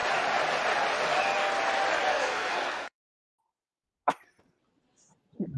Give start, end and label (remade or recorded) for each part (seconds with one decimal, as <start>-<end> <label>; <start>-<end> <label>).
0.0-2.1 recorded; 2.1-3.1 remade; 3.1-5.6 recorded